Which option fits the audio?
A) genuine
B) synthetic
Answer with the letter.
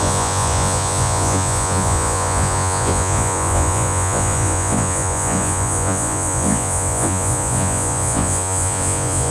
B